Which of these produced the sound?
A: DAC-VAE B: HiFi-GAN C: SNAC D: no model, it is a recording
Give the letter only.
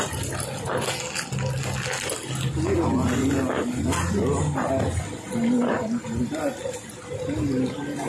D